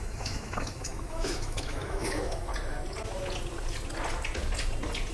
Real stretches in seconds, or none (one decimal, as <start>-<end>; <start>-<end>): 2.5-5.1